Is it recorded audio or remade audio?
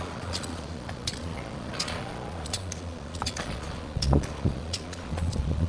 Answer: remade